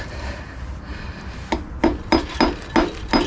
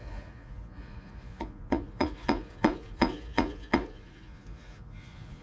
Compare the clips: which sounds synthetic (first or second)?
second